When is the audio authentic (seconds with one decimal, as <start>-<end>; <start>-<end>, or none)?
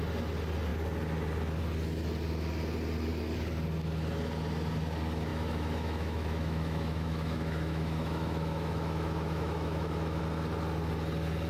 0.0-5.3; 10.2-11.5